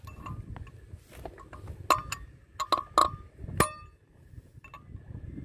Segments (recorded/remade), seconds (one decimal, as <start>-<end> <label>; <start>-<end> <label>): 0.0-5.4 recorded